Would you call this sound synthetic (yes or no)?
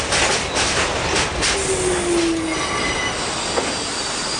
no